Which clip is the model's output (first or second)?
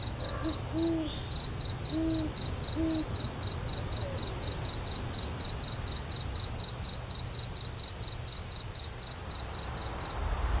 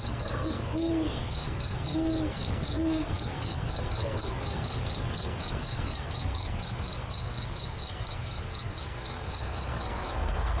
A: second